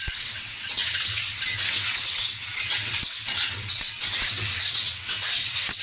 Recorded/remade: remade